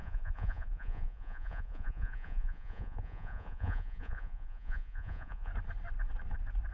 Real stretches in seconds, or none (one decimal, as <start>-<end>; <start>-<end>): 5.5-6.7